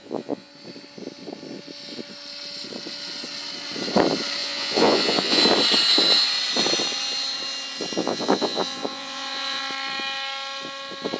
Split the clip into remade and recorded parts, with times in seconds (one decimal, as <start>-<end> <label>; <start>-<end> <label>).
0.0-0.5 remade; 0.5-4.4 recorded; 4.4-5.4 remade; 5.4-8.0 recorded; 8.0-9.6 remade; 9.6-11.2 recorded